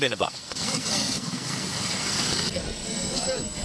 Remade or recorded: remade